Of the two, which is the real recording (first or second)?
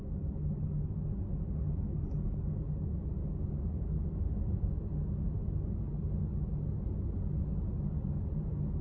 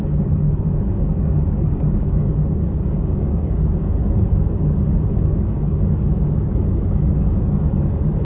first